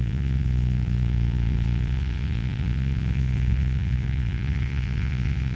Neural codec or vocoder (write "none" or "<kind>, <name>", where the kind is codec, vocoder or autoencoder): vocoder, Vocos